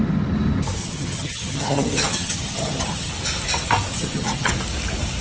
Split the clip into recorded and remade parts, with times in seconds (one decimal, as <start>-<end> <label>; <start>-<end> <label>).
0.0-0.8 recorded; 0.8-3.1 remade; 3.1-3.9 recorded; 3.9-4.5 remade; 4.5-5.2 recorded